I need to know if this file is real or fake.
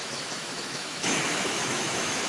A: fake